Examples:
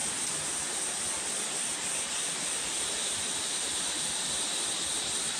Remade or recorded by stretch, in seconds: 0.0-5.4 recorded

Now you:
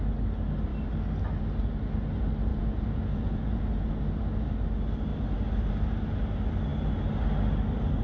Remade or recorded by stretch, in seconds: 0.0-2.5 recorded; 2.5-4.0 remade; 4.0-8.0 recorded

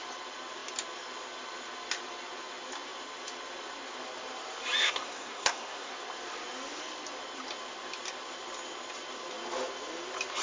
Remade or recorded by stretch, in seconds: 0.0-4.8 recorded; 4.8-5.9 remade; 5.9-10.4 recorded

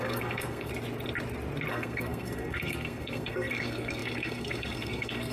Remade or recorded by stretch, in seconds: 0.0-0.7 remade; 0.7-1.7 recorded; 1.7-5.3 remade